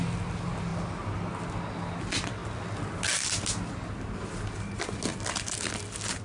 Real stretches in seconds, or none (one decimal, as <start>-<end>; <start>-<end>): 0.0-6.2